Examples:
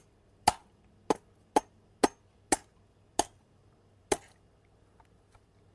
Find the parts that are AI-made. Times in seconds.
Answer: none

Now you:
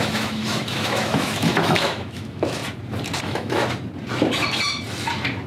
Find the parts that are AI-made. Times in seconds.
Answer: 0.0-2.6 (autoencoder, DAC-VAE); 3.2-3.6

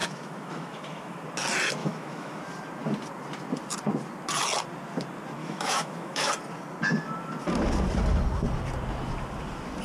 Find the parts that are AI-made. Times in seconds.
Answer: 0.0-1.2 (autoencoder, DAC-VAE); 1.8-2.4; 5.4-6.3

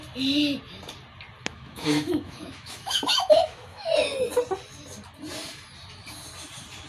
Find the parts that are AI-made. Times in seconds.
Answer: 1.5-3.9 (autoencoder, DAC-VAE)

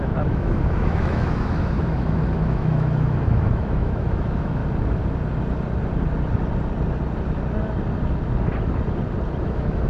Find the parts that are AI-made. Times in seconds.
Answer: 0.0-4.6 (autoencoder, DAC-VAE); 9.4-9.9